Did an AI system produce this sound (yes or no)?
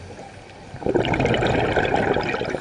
no